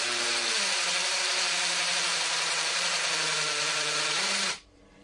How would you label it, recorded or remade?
remade